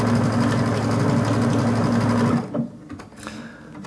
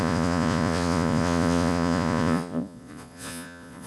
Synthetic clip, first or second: second